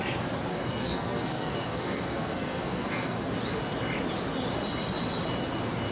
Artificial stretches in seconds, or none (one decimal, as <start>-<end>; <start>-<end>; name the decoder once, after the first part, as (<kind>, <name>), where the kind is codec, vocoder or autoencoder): 0.5-3.3 (codec, SNAC)

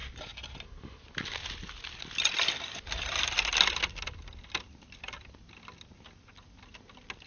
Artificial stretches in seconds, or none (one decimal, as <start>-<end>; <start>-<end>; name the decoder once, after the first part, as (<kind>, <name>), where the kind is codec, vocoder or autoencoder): none

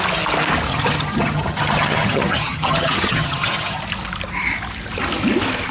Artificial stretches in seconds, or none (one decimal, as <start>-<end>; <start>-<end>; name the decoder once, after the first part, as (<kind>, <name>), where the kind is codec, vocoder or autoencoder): 0.7-3.8 (vocoder, HiFi-GAN)

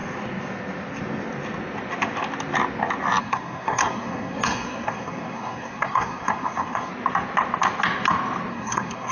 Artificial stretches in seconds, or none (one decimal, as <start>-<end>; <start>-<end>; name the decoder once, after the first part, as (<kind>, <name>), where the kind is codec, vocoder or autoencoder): 3.2-6.9 (codec, SNAC); 8.5-9.1

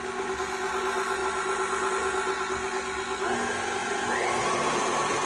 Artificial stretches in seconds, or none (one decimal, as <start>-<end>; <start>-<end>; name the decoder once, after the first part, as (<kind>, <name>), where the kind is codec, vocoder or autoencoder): none